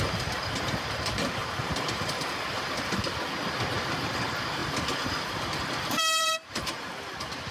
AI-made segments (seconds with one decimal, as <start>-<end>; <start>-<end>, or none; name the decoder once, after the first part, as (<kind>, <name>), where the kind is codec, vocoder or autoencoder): 1.4-2.7 (vocoder, BigVGAN v2); 6.2-6.7